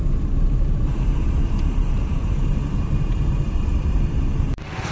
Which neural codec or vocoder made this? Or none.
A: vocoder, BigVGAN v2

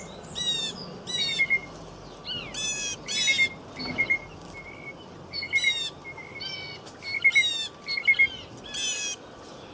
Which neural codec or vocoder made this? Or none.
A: none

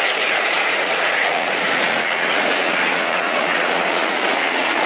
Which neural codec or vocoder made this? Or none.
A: vocoder, Vocos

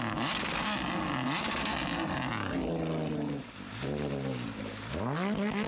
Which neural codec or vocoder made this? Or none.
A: none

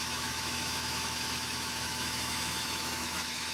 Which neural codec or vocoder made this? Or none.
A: autoencoder, DAC-VAE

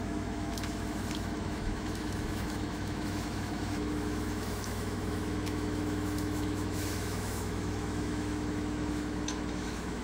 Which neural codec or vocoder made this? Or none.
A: autoencoder, DAC-VAE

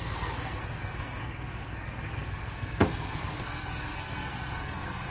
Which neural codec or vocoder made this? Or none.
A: codec, SNAC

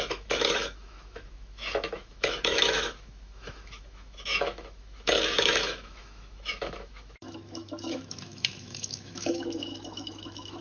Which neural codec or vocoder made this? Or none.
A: autoencoder, DAC-VAE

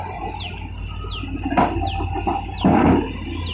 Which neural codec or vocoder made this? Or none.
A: none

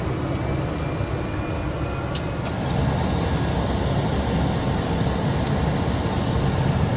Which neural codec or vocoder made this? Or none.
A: none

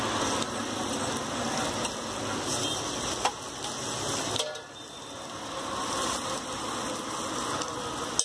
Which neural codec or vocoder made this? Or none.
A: none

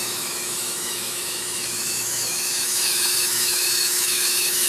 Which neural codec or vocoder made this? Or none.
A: autoencoder, DAC-VAE